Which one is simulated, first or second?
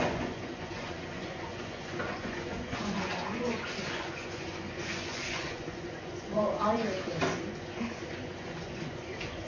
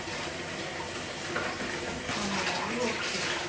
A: first